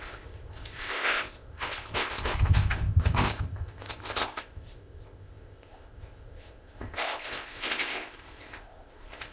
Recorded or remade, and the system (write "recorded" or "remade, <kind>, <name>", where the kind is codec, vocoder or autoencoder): remade, codec, ZipCodec